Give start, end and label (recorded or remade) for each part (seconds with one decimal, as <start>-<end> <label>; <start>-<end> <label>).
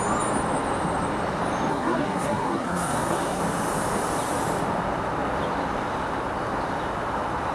0.0-1.7 recorded; 1.7-3.4 remade; 3.4-7.5 recorded